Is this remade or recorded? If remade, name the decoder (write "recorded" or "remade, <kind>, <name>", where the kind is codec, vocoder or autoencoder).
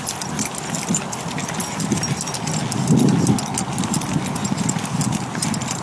recorded